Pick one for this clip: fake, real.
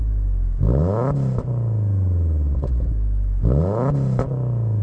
real